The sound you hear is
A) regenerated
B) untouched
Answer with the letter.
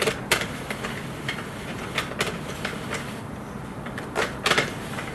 A